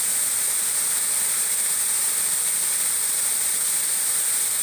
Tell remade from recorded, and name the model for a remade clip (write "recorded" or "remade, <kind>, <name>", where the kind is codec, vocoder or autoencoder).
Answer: recorded